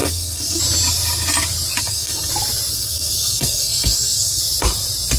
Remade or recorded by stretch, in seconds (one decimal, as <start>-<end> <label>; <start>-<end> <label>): 0.0-0.6 remade; 0.6-1.8 recorded; 1.8-2.3 remade; 2.3-2.7 recorded; 2.7-4.4 remade; 4.4-5.2 recorded

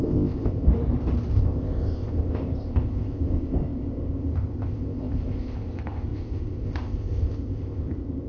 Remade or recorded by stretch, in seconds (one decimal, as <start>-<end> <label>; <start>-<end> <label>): 0.0-0.7 remade; 0.7-1.3 recorded; 1.3-8.3 remade

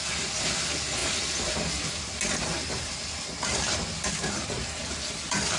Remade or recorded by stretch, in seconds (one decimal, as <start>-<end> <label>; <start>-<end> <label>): 0.0-5.6 recorded

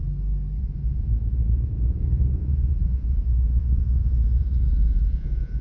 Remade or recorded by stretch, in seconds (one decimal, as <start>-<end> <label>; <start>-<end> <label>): 0.0-0.6 recorded; 0.6-5.6 remade

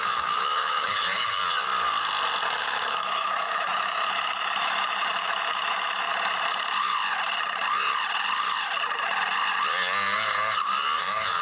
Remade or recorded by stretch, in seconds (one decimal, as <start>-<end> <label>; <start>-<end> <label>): 0.0-1.4 remade; 1.4-2.6 recorded; 2.6-6.1 remade; 6.1-11.0 recorded; 11.0-11.4 remade